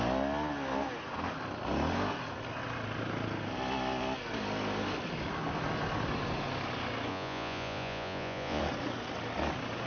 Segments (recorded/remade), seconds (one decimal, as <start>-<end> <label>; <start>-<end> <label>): 0.0-7.1 recorded; 7.1-8.6 remade; 8.6-9.9 recorded